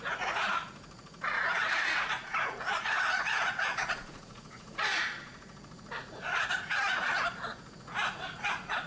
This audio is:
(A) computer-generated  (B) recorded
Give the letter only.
A